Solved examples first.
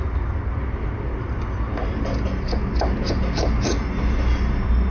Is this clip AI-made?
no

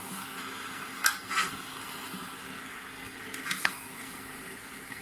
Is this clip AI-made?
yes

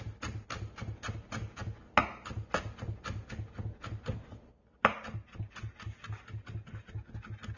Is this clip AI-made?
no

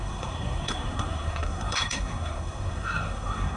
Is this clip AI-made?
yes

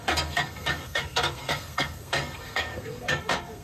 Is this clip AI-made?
yes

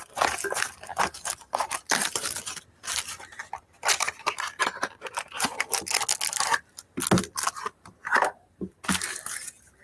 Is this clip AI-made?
no